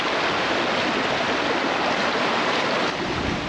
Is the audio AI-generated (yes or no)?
no